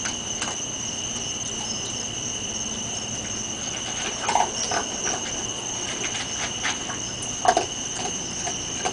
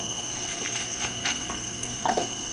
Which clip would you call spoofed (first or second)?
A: second